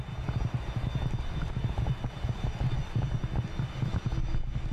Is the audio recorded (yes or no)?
yes